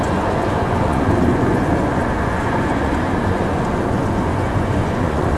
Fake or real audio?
fake